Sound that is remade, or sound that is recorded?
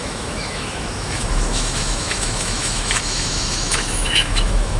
remade